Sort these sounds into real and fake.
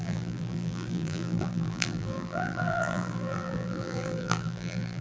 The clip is fake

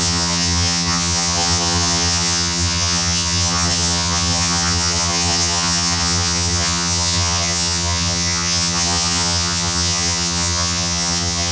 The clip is fake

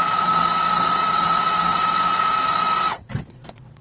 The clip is fake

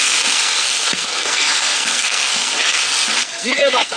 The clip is fake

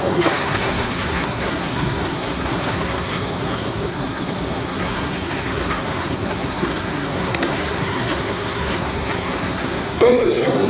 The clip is fake